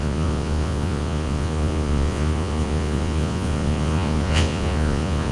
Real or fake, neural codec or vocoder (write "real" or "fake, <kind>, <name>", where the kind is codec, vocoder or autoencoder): fake, vocoder, Vocos